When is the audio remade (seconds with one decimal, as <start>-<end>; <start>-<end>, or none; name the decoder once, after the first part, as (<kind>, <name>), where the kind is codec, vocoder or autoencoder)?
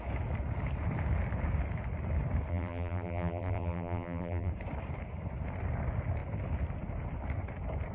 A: 2.5-4.5 (vocoder, BigVGAN v2)